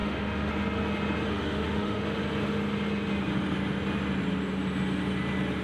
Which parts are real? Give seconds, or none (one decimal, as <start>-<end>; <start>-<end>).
0.5-1.3; 2.0-5.6